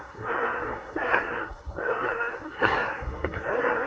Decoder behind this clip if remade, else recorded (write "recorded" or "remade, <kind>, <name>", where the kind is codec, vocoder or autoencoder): remade, codec, SNAC